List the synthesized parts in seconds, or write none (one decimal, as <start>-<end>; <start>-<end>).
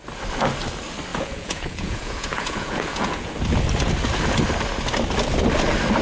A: 1.1-3.3